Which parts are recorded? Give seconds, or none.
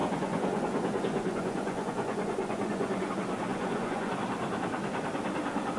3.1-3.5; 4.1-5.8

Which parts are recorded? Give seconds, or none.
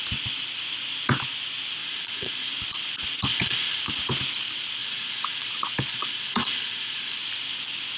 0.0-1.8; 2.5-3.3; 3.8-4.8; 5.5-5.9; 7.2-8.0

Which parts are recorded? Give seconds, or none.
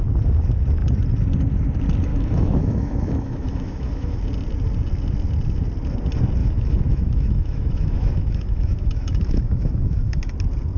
0.0-2.1; 4.2-6.4; 10.3-10.8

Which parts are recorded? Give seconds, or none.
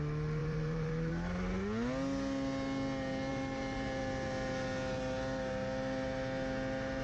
0.0-0.4; 1.1-3.3; 4.0-7.0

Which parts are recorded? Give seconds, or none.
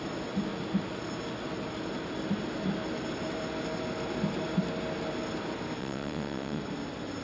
0.0-5.8; 6.6-7.2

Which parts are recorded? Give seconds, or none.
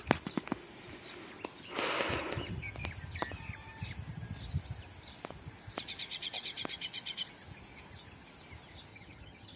0.0-8.9